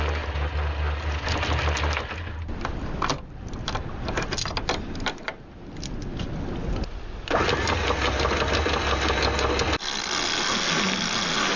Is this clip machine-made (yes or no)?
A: no